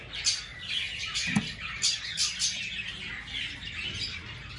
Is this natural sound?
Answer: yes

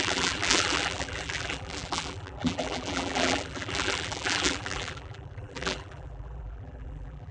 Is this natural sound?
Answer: no